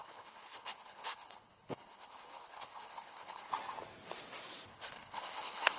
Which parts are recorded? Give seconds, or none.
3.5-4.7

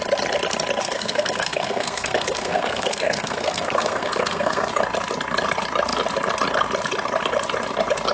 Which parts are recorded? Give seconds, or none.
0.0-0.8; 4.7-8.1

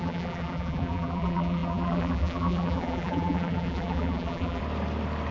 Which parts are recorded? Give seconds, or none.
4.6-5.3

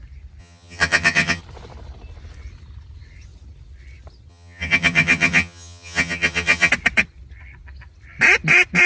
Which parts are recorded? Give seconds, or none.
0.0-0.4; 1.4-4.3; 6.7-8.9